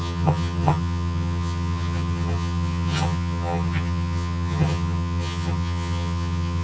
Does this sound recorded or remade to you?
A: remade